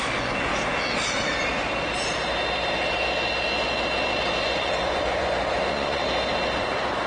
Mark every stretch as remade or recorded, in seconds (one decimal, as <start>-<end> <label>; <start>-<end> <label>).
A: 0.0-0.5 remade; 0.5-4.4 recorded; 4.4-6.0 remade; 6.0-6.6 recorded; 6.6-7.1 remade